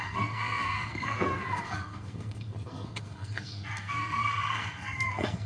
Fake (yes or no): yes